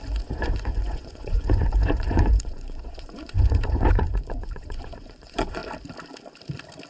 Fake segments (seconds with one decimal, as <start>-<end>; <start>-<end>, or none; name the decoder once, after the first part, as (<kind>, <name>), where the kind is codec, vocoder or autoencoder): 0.0-5.6 (vocoder, Vocos)